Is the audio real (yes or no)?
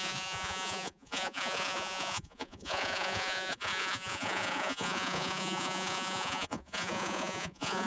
no